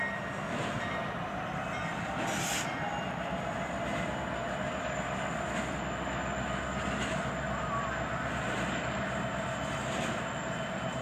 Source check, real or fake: real